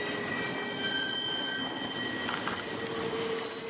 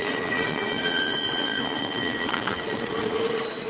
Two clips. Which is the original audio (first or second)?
first